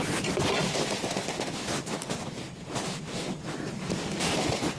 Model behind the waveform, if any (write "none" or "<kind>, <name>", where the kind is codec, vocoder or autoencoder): none